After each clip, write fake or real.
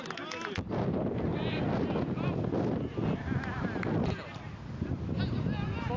real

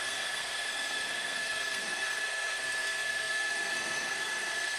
fake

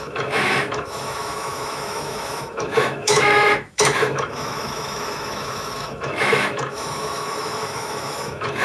fake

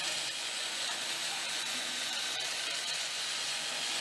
fake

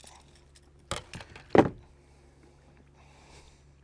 real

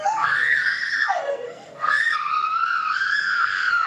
fake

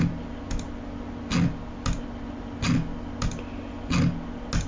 real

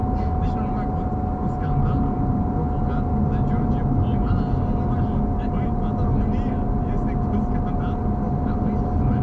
real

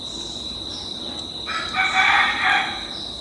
real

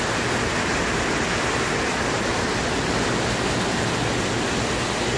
real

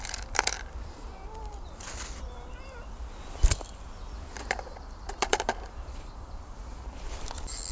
fake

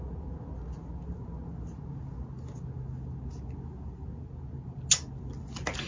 real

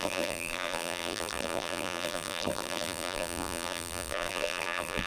fake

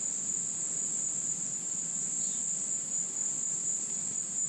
real